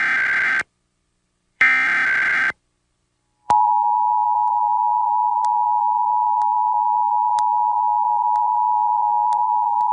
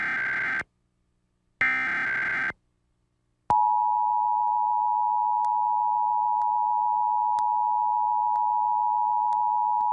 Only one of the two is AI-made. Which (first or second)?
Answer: first